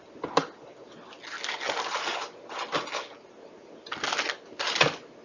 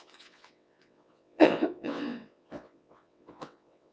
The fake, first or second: second